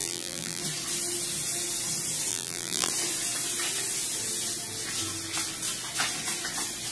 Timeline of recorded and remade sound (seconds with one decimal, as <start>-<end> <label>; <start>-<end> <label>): 0.0-0.6 remade; 0.6-2.3 recorded; 2.3-2.9 remade; 2.9-6.9 recorded

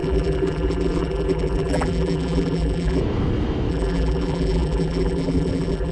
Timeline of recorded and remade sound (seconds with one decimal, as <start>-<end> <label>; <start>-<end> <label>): 0.0-3.0 remade; 3.0-3.7 recorded; 3.7-5.9 remade

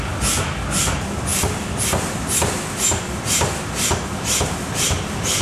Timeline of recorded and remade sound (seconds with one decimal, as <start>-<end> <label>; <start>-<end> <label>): 0.0-1.3 recorded; 1.3-2.4 remade; 2.4-5.4 recorded

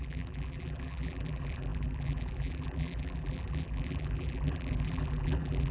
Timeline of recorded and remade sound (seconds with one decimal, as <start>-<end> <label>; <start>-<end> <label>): 0.0-5.7 remade

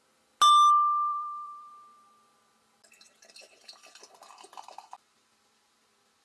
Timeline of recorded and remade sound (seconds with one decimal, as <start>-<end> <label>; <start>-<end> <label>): 0.0-1.1 recorded; 1.1-1.7 remade; 1.7-6.2 recorded

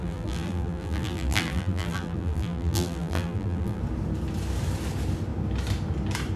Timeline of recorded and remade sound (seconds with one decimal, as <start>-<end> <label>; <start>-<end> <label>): 0.0-3.8 remade; 3.8-6.4 recorded

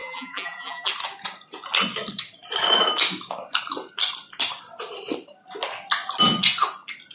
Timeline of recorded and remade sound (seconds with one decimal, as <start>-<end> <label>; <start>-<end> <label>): 0.0-0.9 remade; 0.9-7.1 recorded